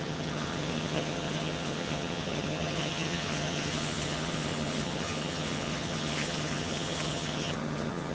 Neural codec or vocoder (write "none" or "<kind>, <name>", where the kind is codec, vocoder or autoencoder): vocoder, HiFi-GAN